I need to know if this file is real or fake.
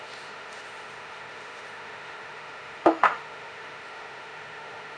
fake